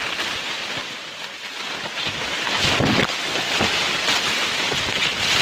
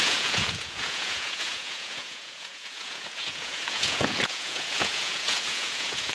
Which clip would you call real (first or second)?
first